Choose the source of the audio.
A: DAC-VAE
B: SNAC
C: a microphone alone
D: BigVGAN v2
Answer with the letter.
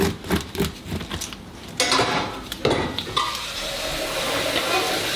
C